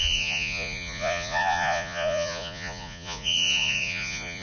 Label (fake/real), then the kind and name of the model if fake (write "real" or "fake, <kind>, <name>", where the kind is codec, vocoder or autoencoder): fake, vocoder, Vocos